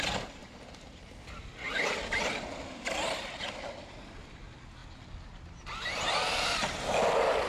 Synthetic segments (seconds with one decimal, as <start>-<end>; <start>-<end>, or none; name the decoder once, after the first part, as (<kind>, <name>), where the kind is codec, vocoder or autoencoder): none

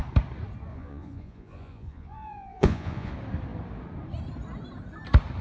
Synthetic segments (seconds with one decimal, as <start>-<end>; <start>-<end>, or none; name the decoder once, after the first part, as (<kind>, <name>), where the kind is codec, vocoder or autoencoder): 0.7-3.1 (vocoder, Vocos)

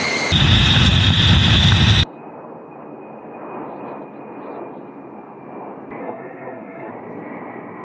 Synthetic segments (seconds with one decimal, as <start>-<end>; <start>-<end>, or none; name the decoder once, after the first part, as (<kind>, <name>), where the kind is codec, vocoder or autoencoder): 6.0-6.9 (codec, SNAC)

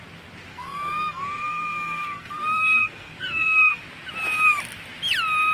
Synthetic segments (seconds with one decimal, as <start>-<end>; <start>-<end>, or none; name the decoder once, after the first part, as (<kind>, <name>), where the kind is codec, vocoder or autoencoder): 0.5-3.8 (codec, SNAC)

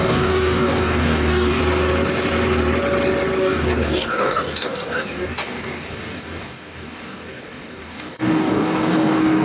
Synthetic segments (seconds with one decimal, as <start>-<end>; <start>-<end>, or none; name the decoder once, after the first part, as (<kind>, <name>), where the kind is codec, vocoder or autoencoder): 0.0-1.6 (codec, DAC); 3.4-9.4

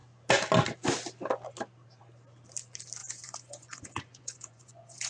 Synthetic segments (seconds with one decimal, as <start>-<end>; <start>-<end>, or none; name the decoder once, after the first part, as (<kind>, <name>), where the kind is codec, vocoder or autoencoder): 3.0-5.1 (vocoder, Vocos)